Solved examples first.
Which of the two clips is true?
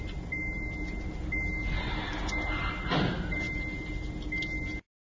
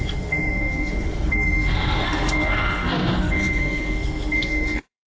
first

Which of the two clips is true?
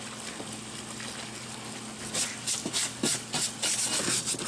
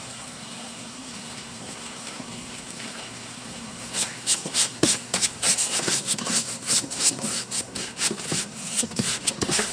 first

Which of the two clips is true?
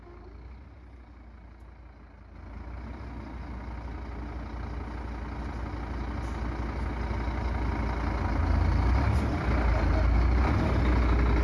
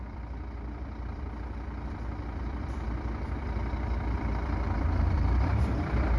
first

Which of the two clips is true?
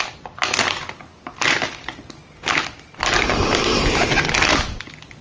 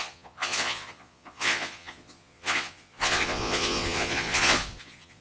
first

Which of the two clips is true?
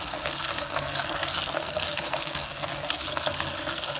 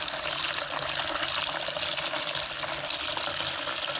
second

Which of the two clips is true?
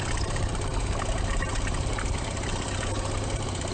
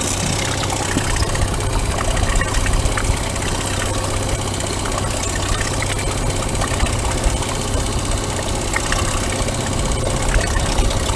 second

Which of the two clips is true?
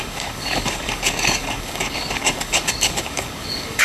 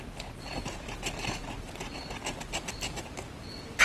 second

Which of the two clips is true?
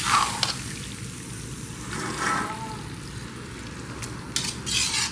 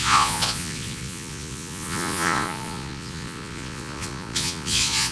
first